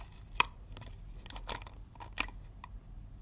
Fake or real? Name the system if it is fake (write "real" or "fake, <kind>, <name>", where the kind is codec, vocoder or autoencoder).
real